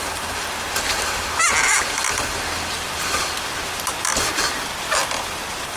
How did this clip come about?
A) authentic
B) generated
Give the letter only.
A